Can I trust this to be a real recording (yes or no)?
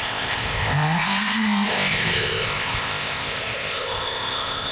no